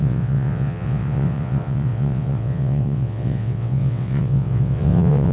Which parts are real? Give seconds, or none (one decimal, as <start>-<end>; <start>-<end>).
none